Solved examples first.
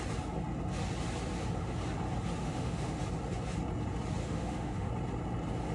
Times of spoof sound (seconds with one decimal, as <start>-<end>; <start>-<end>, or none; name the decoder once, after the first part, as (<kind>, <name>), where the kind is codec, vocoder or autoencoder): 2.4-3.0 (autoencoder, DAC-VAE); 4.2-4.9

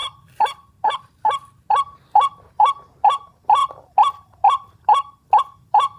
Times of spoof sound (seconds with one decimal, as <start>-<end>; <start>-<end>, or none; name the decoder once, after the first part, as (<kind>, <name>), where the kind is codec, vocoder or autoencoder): 0.0-1.0 (vocoder, BigVGAN v2); 3.6-5.4

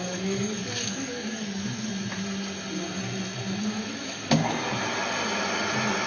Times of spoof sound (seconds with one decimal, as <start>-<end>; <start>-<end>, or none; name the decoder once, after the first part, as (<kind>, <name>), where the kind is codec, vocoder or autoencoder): 0.0-1.9 (codec, DAC); 3.6-4.4

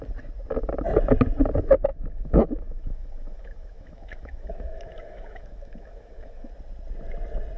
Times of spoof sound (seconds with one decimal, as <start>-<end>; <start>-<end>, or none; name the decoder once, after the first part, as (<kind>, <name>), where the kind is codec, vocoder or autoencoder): 1.9-6.5 (autoencoder, DAC-VAE)

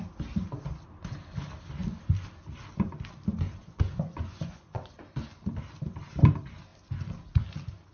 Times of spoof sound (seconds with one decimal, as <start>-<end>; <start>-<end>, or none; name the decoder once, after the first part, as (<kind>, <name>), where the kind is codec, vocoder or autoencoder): 3.6-5.0 (vocoder, Vocos)

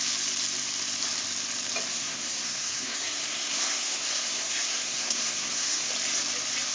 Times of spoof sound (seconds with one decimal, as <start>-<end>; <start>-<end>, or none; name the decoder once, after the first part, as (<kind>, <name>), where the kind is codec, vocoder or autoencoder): 1.9-5.9 (codec, SNAC)